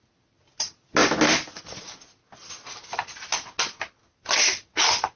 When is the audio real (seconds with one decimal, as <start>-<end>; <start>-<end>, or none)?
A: 0.0-5.2